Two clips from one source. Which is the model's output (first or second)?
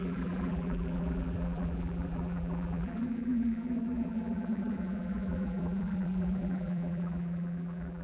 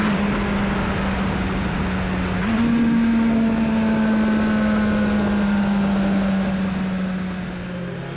first